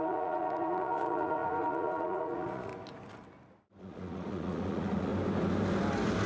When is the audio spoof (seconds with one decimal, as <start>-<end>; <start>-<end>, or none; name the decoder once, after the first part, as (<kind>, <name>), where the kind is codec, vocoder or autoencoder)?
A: 0.0-2.7 (vocoder, Vocos); 3.8-5.1